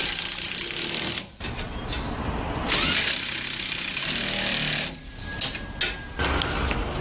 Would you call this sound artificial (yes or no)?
no